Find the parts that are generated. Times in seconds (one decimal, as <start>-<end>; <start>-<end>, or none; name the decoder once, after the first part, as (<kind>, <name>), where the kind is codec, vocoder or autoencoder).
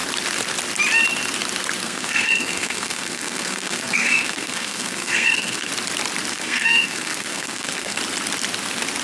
1.8-5.7 (codec, SNAC); 6.3-8.0